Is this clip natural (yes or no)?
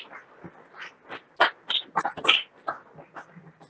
yes